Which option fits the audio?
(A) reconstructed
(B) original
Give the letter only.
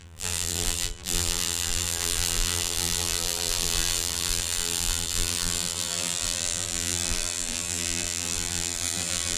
A